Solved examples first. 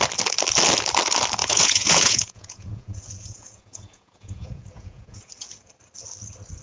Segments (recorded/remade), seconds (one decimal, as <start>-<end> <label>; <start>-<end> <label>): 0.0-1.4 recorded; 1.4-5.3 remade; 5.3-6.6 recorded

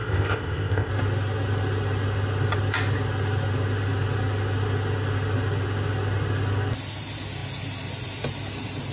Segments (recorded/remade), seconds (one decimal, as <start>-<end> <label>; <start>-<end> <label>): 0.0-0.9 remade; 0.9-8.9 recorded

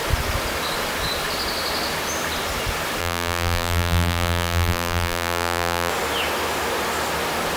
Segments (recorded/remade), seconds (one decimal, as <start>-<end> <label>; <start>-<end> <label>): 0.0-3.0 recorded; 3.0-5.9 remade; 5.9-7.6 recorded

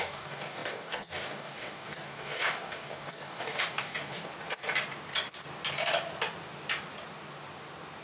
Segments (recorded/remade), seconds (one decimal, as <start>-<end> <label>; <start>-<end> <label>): 0.0-4.3 remade; 4.3-8.0 recorded

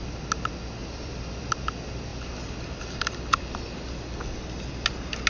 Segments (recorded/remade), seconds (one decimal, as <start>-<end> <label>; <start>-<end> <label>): 0.0-0.8 recorded; 0.8-1.5 remade; 1.5-2.1 recorded; 2.1-3.6 remade; 3.6-5.3 recorded